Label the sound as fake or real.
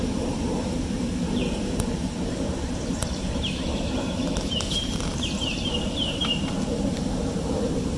fake